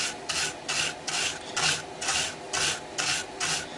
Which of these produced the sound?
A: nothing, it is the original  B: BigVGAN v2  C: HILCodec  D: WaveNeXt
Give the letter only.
A